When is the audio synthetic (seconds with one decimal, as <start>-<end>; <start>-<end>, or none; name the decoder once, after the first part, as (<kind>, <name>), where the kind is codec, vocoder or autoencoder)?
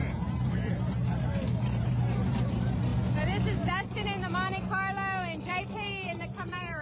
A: 0.0-2.9 (vocoder, BigVGAN v2); 5.5-6.8